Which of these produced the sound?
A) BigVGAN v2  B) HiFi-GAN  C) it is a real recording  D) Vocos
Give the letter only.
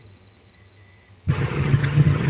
B